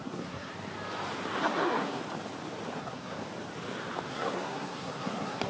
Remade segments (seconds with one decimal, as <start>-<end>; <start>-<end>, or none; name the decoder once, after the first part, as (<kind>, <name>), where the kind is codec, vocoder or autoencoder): 0.0-0.5 (codec, SNAC); 1.4-2.0; 2.8-3.2; 4.1-5.5